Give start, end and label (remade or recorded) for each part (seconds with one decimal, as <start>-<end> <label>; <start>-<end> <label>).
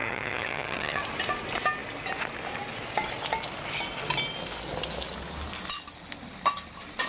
0.0-1.0 remade; 1.0-7.1 recorded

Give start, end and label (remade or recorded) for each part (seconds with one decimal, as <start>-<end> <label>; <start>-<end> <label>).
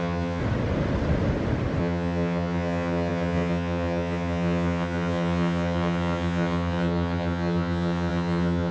0.0-0.4 remade; 0.4-1.8 recorded; 1.8-8.7 remade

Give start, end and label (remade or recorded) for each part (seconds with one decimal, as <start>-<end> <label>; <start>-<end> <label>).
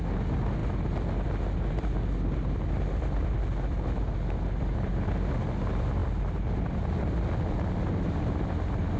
0.0-9.0 recorded